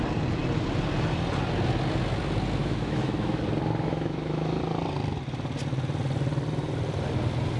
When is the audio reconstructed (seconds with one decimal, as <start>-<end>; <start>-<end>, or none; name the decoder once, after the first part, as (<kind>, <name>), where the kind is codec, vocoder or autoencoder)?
2.6-3.4 (autoencoder, DAC-VAE); 3.9-4.6